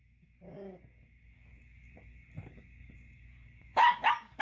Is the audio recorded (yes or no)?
no